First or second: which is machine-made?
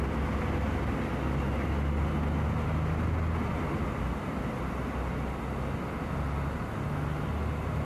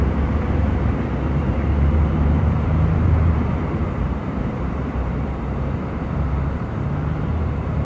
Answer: second